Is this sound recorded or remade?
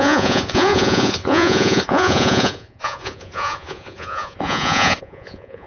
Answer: remade